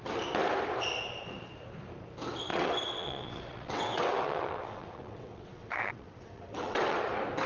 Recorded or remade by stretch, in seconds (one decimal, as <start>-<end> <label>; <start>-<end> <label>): 0.0-2.5 recorded; 2.5-7.0 remade; 7.0-7.5 recorded